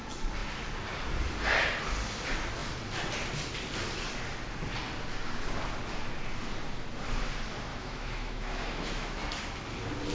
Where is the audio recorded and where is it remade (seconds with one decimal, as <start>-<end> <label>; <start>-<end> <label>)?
0.0-7.7 recorded; 7.7-9.2 remade; 9.2-10.1 recorded